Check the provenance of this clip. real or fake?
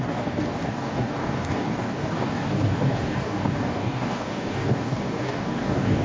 fake